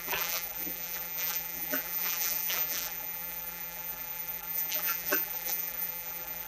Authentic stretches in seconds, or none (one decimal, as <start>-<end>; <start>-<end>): none